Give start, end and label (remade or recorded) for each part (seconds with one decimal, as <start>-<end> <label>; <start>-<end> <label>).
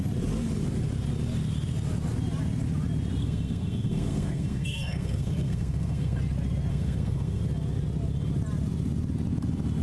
0.0-3.2 recorded; 3.2-6.2 remade; 6.2-6.7 recorded; 6.7-7.4 remade; 7.4-9.8 recorded